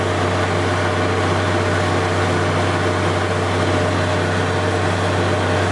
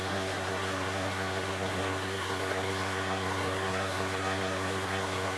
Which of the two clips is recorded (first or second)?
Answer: first